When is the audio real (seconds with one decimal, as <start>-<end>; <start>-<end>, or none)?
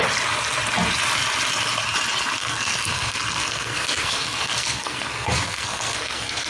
0.0-2.4